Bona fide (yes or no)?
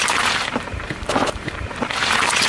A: no